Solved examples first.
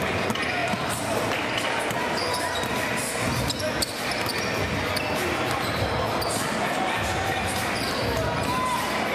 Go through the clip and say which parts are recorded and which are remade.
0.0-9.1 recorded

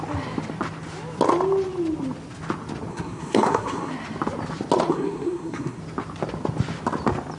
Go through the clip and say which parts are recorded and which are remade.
0.0-2.9 recorded; 2.9-3.9 remade; 3.9-4.9 recorded; 4.9-5.8 remade; 5.8-7.4 recorded

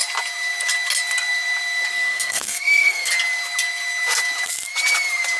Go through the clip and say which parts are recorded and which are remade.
0.0-1.9 recorded; 1.9-3.1 remade; 3.1-5.4 recorded

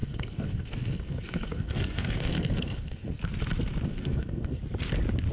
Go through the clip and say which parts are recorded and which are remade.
0.0-3.2 remade; 3.2-3.9 recorded; 3.9-4.6 remade; 4.6-5.3 recorded

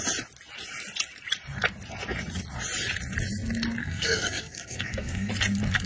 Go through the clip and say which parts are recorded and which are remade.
0.0-3.8 recorded; 3.8-5.3 remade; 5.3-5.9 recorded

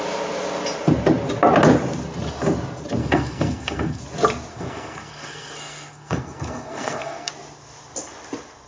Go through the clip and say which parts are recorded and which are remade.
0.0-3.0 recorded; 3.0-4.0 remade; 4.0-4.5 recorded; 4.5-7.3 remade; 7.3-8.7 recorded